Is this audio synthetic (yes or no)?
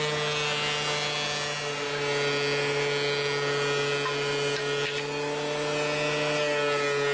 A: no